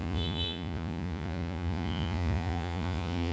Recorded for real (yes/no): no